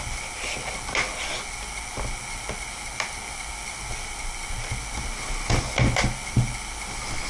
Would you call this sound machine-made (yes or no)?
no